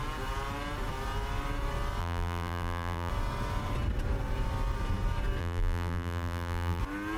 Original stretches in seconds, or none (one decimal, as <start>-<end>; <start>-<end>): 0.0-2.0; 3.1-5.4; 6.8-7.2